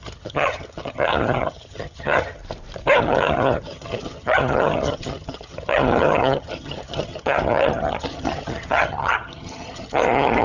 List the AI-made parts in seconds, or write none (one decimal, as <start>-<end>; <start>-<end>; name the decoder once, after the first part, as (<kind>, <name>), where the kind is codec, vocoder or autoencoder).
0.0-2.4 (vocoder, HiFi-GAN); 3.0-10.4